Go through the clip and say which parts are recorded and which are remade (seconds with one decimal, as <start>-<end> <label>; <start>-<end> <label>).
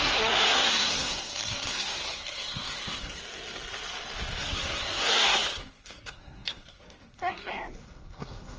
0.0-3.2 remade; 3.2-4.4 recorded; 4.4-8.6 remade